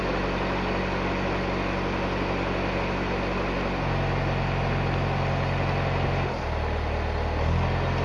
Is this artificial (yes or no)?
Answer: no